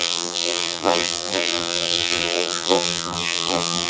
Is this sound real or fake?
fake